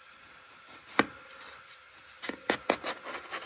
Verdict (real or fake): real